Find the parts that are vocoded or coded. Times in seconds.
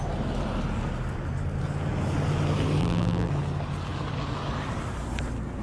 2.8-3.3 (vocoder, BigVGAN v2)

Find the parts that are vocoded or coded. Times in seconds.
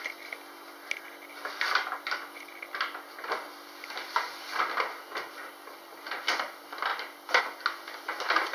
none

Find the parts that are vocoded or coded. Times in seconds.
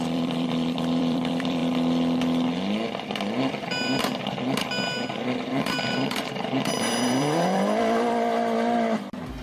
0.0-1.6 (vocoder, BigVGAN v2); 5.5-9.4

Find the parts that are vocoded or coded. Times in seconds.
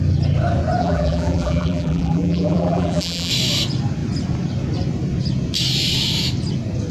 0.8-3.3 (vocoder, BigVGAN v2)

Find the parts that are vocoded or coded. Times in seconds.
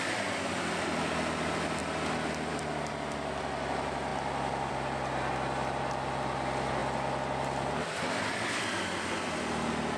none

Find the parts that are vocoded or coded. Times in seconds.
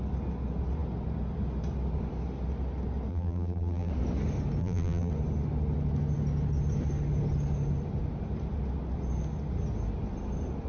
3.1-3.9 (vocoder, BigVGAN v2); 4.6-5.1